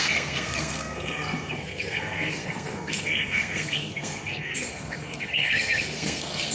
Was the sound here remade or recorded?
remade